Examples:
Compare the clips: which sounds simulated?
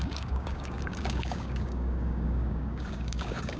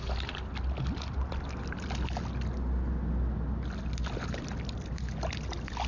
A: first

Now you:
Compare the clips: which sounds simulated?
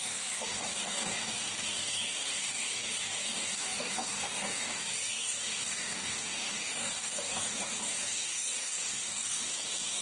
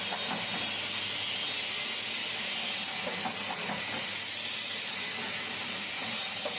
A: first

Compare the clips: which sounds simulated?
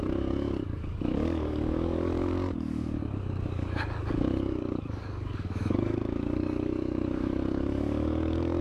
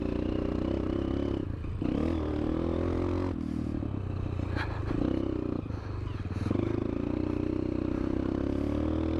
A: first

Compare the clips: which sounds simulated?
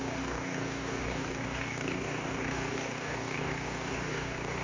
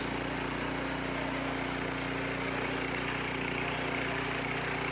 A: first